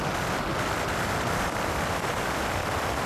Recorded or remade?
recorded